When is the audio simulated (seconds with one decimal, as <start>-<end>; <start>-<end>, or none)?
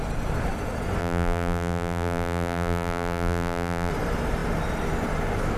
1.0-3.9